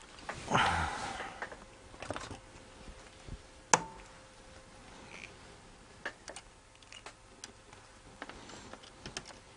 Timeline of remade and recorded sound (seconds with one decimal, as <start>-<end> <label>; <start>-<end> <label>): 0.0-9.6 recorded